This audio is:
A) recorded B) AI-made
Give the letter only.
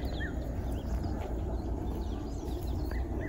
A